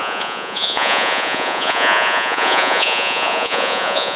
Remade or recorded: remade